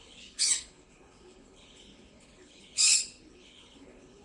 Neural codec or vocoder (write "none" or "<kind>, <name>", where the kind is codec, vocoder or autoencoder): codec, HILCodec